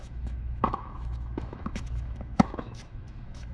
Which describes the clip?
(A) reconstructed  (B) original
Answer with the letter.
A